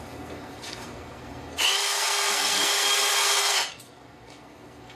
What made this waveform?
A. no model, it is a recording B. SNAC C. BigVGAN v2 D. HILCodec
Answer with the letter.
B